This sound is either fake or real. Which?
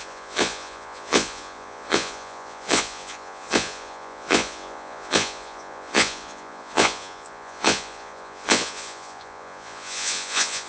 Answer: fake